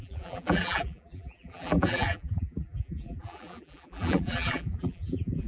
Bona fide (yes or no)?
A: no